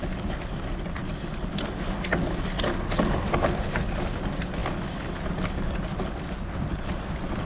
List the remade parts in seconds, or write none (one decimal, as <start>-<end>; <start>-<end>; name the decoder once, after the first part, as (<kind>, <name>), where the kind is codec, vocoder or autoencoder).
none

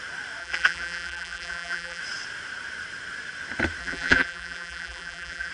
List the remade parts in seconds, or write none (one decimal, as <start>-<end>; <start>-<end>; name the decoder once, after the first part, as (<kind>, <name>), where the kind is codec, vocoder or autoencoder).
0.4-2.0 (vocoder, BigVGAN v2); 3.8-5.5

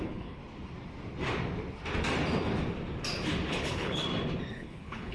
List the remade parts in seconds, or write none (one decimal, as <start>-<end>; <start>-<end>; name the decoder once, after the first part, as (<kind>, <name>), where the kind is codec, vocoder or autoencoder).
0.0-0.4 (codec, HILCodec); 3.5-4.0; 4.5-5.1

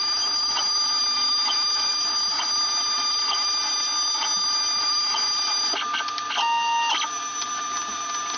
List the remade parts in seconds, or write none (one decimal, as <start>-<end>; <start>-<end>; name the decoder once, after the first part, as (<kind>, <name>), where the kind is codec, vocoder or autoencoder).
none